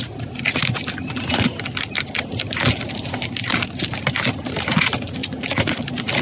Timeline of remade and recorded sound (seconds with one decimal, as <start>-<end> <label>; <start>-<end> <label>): 0.0-5.2 recorded; 5.2-5.8 remade; 5.8-6.2 recorded